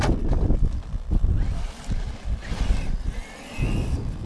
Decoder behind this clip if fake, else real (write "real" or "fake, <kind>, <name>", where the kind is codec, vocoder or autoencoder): real